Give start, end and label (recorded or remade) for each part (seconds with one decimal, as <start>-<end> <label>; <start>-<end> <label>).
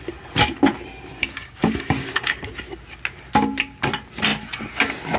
0.0-1.1 recorded; 1.1-2.5 remade; 2.5-5.2 recorded